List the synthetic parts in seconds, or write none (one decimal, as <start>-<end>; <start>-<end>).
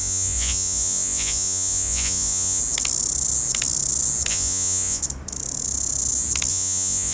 0.0-2.6; 4.3-5.0; 6.5-7.1